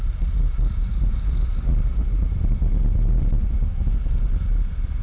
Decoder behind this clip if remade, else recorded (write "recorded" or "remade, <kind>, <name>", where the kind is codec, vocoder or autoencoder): recorded